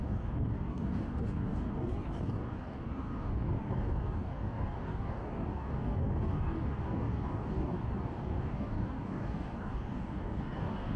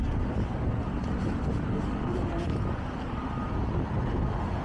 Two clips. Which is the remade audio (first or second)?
first